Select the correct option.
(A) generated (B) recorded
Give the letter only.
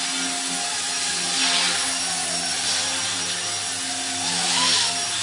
B